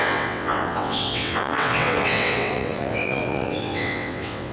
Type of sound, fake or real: fake